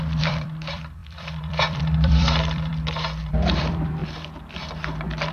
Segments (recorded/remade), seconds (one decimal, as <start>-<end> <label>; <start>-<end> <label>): 0.0-2.7 remade; 2.7-3.2 recorded; 3.2-4.0 remade; 4.0-5.3 recorded